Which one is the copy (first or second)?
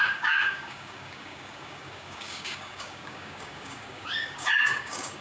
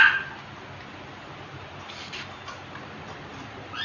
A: first